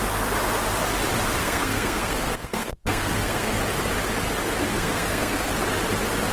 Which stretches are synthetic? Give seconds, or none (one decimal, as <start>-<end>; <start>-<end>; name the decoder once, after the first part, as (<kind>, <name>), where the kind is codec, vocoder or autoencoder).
1.4-3.6 (codec, SNAC); 4.7-5.5